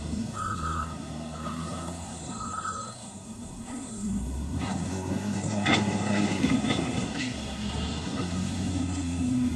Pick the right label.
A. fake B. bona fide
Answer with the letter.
A